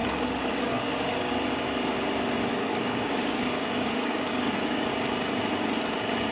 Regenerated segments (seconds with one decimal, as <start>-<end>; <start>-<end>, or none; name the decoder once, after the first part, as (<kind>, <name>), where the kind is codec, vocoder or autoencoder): 0.0-1.3 (codec, DAC); 2.5-4.9